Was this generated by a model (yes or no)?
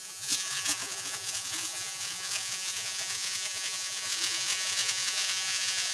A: yes